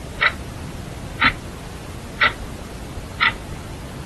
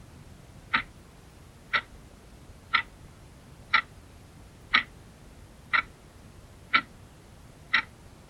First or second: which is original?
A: second